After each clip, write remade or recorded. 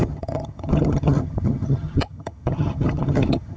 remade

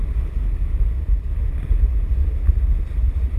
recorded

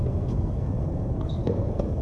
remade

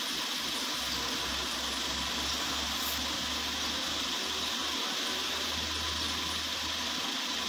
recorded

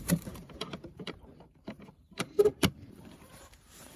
remade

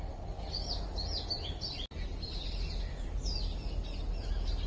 recorded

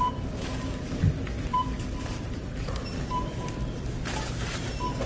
remade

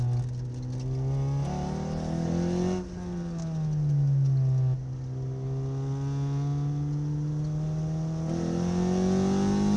recorded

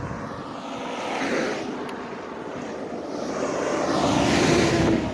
recorded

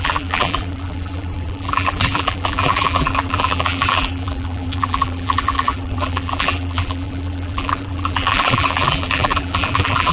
remade